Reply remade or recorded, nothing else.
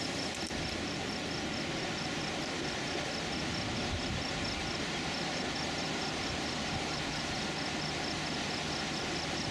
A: recorded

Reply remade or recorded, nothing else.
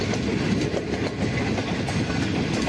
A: recorded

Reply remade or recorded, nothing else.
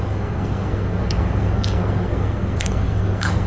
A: remade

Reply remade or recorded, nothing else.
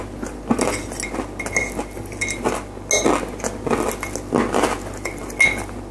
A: recorded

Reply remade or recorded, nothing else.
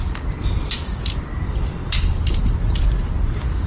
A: recorded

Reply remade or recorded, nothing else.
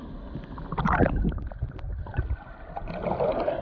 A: recorded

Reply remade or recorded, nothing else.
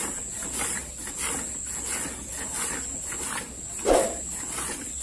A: recorded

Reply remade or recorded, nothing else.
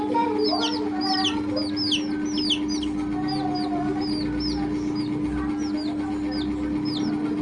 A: recorded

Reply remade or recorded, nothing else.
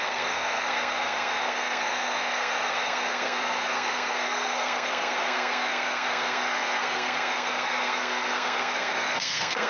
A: remade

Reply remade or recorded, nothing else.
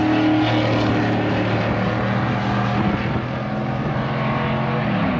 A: recorded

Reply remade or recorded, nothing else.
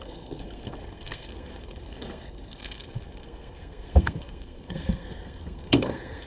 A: remade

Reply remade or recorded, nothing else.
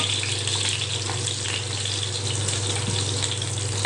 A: recorded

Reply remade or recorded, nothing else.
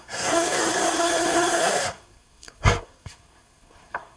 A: remade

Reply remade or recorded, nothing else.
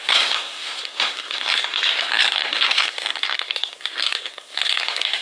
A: remade